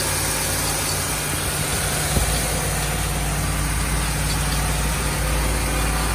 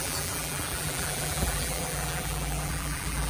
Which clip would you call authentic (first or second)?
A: first